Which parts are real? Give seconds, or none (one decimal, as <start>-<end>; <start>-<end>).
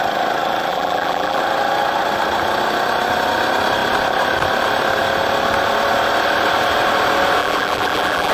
0.0-0.7; 1.4-7.4